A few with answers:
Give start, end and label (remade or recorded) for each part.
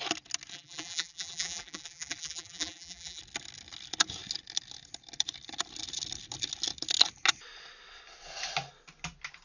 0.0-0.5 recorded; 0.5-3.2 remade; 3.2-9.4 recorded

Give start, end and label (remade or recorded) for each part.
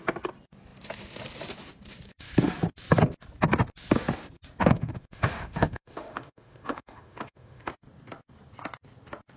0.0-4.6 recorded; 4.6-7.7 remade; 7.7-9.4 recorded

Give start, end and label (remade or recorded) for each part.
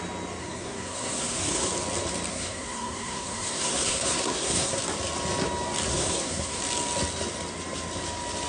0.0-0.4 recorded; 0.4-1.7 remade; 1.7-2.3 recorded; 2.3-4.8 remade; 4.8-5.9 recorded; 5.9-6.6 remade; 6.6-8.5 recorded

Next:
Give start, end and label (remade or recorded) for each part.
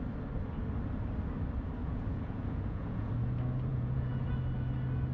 0.0-1.8 recorded; 1.8-3.1 remade; 3.1-3.7 recorded; 3.7-4.3 remade; 4.3-5.1 recorded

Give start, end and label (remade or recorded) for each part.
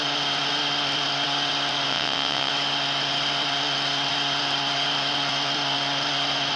0.0-1.9 recorded; 1.9-2.5 remade; 2.5-6.6 recorded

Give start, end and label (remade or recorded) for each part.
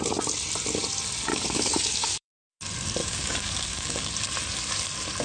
0.0-1.3 recorded; 1.3-2.5 remade; 2.5-3.0 recorded; 3.0-4.1 remade; 4.1-5.2 recorded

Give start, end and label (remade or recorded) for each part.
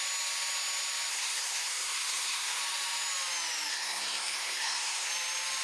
0.0-1.1 recorded; 1.1-2.6 remade; 2.6-3.7 recorded; 3.7-5.1 remade; 5.1-5.6 recorded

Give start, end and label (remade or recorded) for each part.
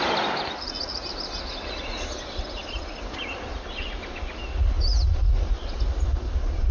0.0-6.7 recorded